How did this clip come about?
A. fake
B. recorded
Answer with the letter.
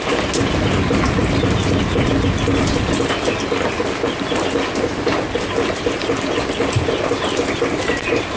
B